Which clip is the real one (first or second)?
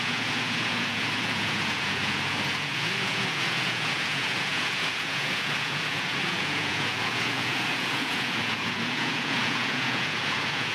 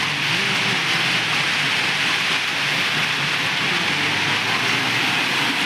second